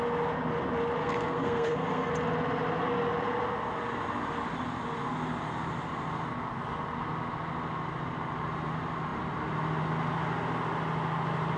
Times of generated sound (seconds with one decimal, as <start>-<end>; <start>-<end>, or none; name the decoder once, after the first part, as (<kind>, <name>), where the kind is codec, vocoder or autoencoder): 1.0-2.1 (codec, SNAC)